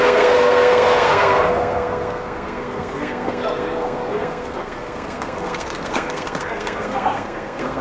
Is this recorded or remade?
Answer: remade